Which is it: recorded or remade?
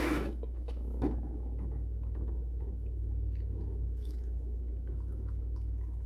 remade